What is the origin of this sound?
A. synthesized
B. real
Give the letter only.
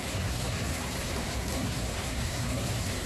A